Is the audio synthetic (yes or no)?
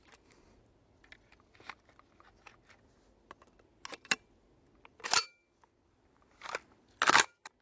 no